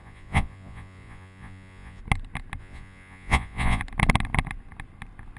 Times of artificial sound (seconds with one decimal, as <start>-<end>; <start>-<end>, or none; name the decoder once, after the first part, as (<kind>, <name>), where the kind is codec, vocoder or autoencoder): 0.0-2.0 (vocoder, Vocos); 2.6-3.8